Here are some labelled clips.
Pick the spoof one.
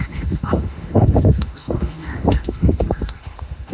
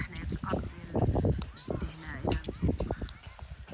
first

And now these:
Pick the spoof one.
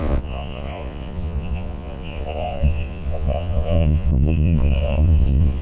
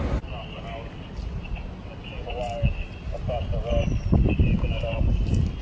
first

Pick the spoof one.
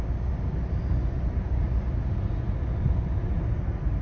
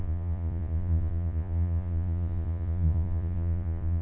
second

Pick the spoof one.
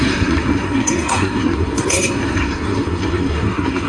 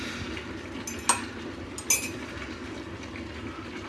first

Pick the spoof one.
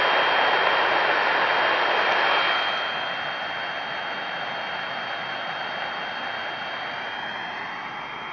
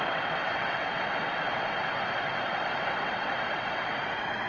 second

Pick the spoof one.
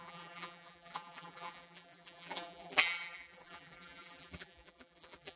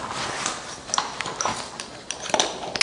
first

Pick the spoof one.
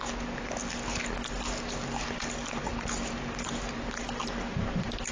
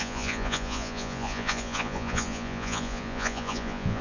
second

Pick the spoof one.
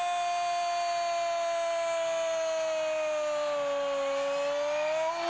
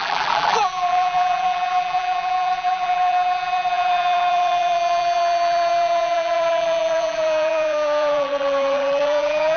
second